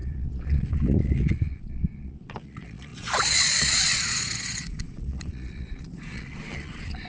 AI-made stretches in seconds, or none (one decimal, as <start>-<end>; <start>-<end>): 0.0-7.1